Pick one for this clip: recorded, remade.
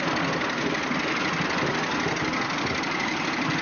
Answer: recorded